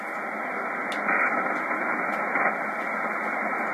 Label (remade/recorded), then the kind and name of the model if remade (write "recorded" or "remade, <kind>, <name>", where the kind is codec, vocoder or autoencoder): recorded